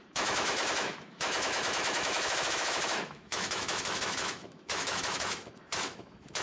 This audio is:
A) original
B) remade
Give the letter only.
B